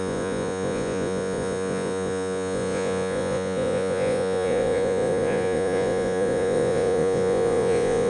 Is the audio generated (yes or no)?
yes